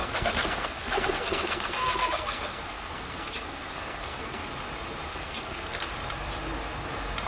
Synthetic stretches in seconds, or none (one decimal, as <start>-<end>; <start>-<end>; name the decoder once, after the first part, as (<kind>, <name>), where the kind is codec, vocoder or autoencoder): 0.0-4.4 (codec, SNAC); 5.1-5.9